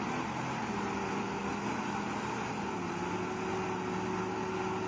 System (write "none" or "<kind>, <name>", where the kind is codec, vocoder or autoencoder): none